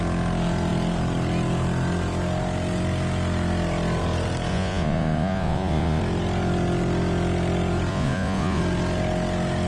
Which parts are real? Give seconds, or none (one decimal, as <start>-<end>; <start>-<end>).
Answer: 0.0-4.5; 6.0-7.9; 8.6-9.7